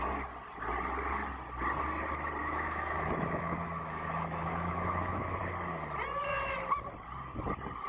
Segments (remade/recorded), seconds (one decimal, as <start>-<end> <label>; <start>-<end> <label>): 0.0-2.4 recorded; 2.4-5.4 remade; 5.4-7.9 recorded